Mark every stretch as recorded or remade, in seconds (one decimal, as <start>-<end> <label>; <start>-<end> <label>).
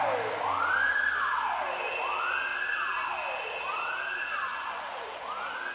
0.0-4.5 recorded; 4.5-5.2 remade; 5.2-5.7 recorded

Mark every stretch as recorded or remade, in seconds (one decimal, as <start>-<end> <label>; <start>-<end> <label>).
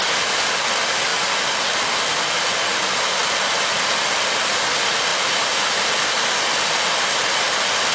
0.0-7.9 recorded